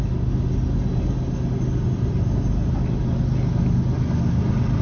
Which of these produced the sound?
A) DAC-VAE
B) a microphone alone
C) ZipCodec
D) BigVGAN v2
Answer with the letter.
B